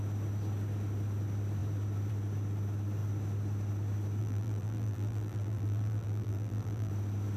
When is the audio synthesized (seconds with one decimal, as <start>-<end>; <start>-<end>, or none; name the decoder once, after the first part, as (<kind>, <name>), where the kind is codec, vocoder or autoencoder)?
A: 4.2-6.9 (vocoder, BigVGAN v2)